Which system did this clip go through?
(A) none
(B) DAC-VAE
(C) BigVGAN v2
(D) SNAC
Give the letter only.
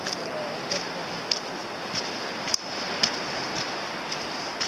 A